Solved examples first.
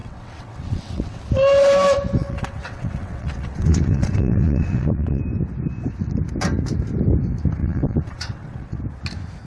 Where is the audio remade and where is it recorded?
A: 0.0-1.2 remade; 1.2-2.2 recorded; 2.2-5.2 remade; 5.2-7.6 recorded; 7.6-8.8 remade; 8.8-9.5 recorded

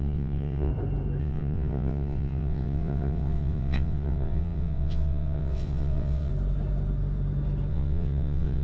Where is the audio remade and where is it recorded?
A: 0.0-0.7 remade; 0.7-1.2 recorded; 1.2-6.3 remade; 6.3-7.7 recorded; 7.7-8.6 remade

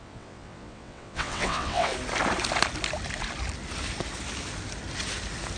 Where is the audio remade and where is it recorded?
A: 0.0-1.9 remade; 1.9-5.6 recorded